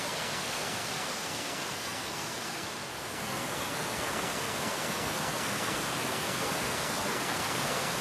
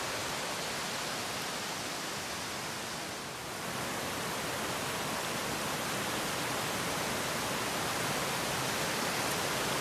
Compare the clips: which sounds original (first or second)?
second